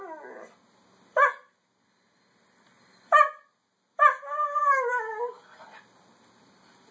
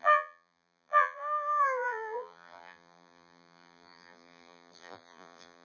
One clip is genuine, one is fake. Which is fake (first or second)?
second